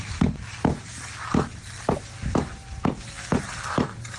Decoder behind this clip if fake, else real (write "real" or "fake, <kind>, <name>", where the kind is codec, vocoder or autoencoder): real